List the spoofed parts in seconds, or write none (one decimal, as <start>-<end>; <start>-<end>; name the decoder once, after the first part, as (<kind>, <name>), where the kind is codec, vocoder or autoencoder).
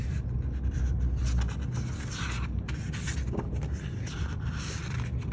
0.6-1.2 (vocoder, BigVGAN v2); 4.2-5.3